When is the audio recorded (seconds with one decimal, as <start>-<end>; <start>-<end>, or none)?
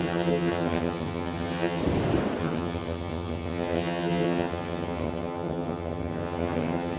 1.8-2.4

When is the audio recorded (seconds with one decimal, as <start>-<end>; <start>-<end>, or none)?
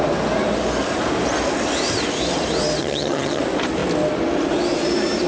0.0-2.8; 3.4-5.3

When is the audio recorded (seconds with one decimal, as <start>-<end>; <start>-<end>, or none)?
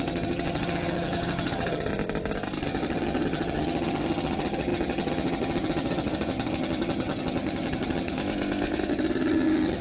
1.9-2.6; 8.2-8.9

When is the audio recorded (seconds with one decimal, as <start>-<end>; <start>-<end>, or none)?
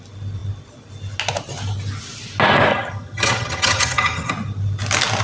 0.0-2.7; 4.3-5.2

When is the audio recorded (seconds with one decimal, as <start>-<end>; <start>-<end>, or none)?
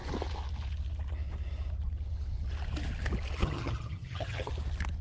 0.0-3.4; 4.5-5.0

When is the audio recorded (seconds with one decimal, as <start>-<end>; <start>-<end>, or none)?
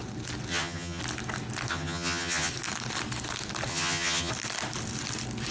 0.0-0.5; 1.0-1.7; 2.5-3.7; 4.3-5.5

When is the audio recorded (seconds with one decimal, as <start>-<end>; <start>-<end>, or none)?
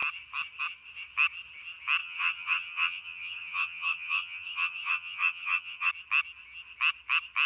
0.0-2.0; 5.9-7.5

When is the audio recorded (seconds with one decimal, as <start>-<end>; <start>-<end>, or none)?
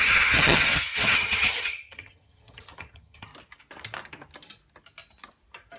3.3-5.8